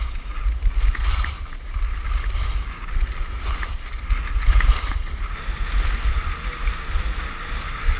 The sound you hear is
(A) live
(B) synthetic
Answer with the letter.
A